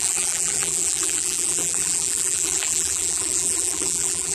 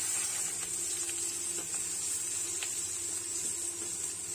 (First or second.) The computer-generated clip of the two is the first